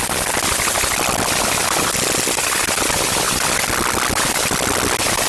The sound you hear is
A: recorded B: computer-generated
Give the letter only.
A